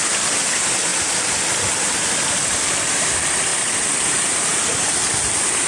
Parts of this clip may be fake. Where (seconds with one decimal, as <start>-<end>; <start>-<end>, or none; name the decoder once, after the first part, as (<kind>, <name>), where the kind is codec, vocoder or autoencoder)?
3.5-4.9 (vocoder, BigVGAN v2)